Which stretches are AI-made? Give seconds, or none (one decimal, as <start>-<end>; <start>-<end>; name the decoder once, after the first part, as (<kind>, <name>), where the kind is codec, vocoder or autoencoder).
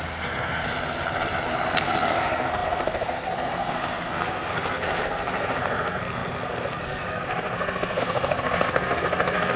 0.0-0.7 (codec, SNAC); 1.5-9.6